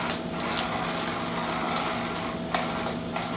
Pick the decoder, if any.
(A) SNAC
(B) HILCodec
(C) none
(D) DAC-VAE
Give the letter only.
C